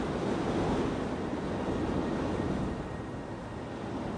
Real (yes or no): yes